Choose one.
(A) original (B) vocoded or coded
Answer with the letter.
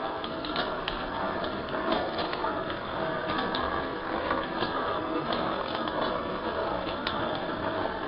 B